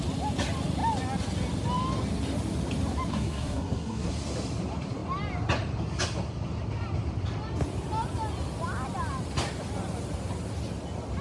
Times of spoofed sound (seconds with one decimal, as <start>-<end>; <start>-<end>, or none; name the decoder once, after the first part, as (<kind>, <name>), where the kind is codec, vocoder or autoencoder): 3.1-4.1 (codec, SNAC)